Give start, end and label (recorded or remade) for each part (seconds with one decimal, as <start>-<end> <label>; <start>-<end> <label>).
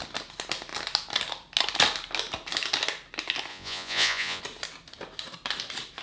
0.0-3.5 recorded; 3.5-4.4 remade; 4.4-6.0 recorded